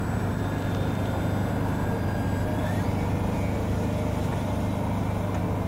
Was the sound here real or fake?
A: real